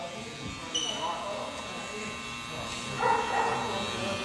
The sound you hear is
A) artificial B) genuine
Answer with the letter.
B